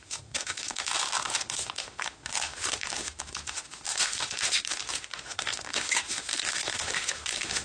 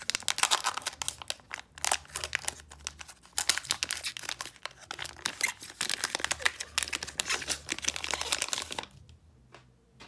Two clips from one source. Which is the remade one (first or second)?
first